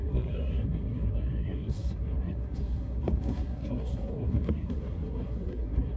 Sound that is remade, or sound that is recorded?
remade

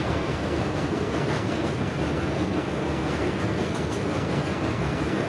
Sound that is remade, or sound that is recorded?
remade